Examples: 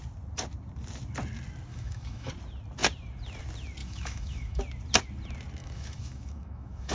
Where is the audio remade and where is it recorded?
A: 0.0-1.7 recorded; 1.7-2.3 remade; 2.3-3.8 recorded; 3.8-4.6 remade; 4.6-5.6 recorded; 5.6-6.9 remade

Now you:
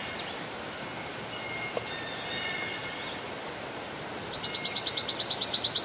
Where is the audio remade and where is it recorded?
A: 0.0-5.8 recorded

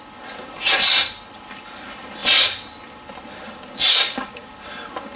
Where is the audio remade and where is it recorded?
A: 0.0-3.9 recorded; 3.9-4.5 remade; 4.5-5.2 recorded

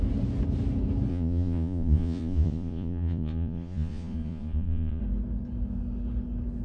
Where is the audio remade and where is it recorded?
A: 0.0-1.1 recorded; 1.1-5.0 remade; 5.0-6.6 recorded

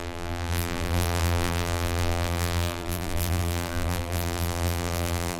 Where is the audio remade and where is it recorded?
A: 0.0-5.4 remade

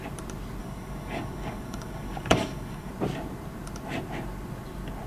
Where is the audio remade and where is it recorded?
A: 0.0-0.6 recorded; 0.6-2.9 remade; 2.9-5.1 recorded